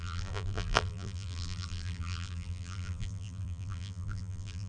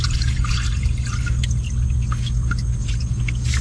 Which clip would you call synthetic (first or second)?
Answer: first